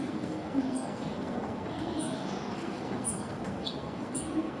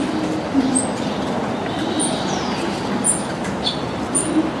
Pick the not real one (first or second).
first